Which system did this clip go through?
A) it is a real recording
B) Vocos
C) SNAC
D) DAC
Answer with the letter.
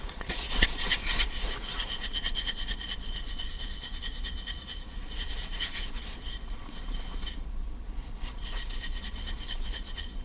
B